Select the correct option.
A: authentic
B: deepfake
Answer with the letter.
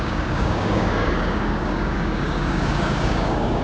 B